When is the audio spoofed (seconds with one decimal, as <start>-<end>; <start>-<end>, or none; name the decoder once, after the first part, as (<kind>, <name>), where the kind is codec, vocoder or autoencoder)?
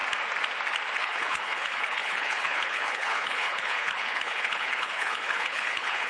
1.0-6.1 (codec, HILCodec)